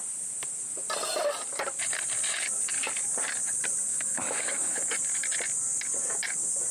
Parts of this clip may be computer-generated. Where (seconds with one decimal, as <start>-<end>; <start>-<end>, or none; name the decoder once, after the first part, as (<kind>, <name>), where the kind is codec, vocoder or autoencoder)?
3.9-4.9 (autoencoder, DAC-VAE)